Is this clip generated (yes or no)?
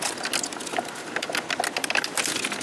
no